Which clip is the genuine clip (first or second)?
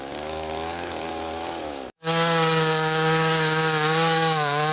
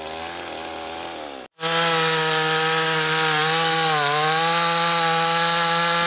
second